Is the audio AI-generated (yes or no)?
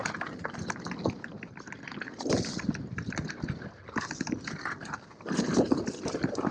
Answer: no